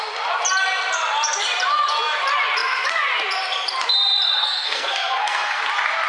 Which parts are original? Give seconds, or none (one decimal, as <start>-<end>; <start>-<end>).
0.0-4.4; 5.6-6.1